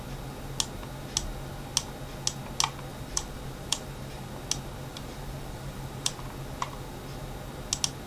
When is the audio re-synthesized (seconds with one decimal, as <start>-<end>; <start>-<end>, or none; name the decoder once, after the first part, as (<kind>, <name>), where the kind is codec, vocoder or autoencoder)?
2.9-4.3 (vocoder, BigVGAN v2); 4.9-6.1